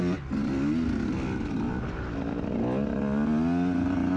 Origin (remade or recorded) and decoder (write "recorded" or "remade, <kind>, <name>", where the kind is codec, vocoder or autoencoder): recorded